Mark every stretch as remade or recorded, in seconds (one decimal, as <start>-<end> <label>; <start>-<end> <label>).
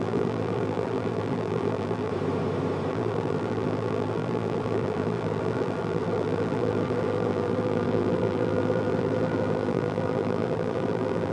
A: 0.0-2.1 remade; 2.1-2.9 recorded; 2.9-11.3 remade